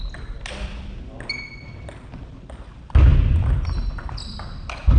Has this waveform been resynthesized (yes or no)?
no